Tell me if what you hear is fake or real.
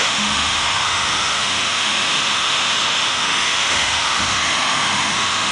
fake